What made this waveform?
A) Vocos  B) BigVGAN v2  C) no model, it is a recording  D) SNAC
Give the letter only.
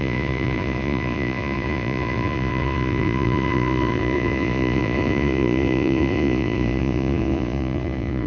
A